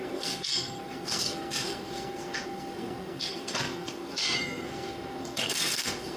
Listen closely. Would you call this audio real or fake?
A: fake